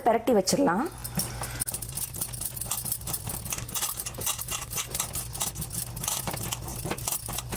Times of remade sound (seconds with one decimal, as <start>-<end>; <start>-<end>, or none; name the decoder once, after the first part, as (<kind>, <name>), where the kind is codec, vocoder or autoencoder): none